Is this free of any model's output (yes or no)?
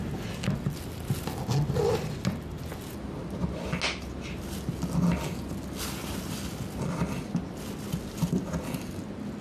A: yes